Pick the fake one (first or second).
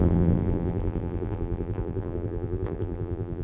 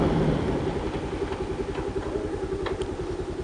first